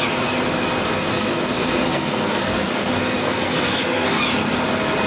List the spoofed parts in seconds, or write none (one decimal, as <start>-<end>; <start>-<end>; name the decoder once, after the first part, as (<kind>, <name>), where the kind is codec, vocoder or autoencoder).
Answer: 1.1-4.2 (codec, SNAC)

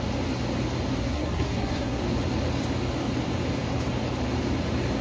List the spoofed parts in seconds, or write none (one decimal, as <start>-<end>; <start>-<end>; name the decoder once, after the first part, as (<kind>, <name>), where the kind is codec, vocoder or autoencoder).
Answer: 1.0-2.0 (codec, SNAC)

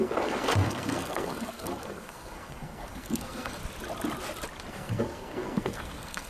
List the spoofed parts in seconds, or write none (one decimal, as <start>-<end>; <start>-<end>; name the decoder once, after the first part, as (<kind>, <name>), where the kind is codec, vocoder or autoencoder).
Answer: 0.0-3.6 (codec, SNAC); 4.7-6.3

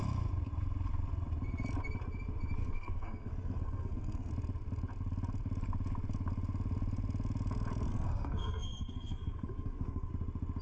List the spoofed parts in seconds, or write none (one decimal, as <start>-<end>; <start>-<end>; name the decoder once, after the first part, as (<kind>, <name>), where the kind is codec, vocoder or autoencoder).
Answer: 2.6-4.3 (codec, SNAC); 7.9-10.1

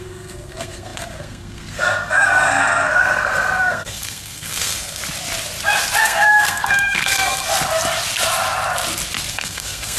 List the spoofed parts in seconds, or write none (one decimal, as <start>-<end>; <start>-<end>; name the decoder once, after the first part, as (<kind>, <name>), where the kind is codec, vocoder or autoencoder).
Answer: 0.0-5.0 (codec, SNAC); 6.0-7.5; 9.3-10.0